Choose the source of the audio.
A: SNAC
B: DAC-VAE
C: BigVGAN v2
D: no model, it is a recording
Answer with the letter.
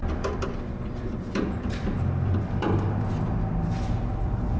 C